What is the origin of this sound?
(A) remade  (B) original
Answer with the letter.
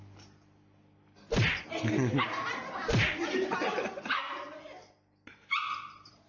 B